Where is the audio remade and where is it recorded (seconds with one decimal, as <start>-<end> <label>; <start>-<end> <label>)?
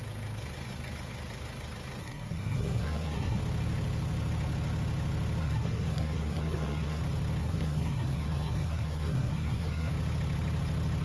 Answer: 0.0-2.0 recorded; 2.0-3.4 remade; 3.4-5.4 recorded; 5.4-7.0 remade; 7.0-7.4 recorded; 7.4-9.9 remade; 9.9-11.0 recorded